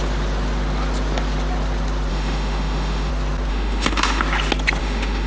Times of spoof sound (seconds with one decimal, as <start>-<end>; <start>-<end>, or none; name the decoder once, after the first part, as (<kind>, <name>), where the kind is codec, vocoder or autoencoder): 2.1-3.1 (autoencoder, DAC-VAE); 3.5-4.2; 4.8-5.3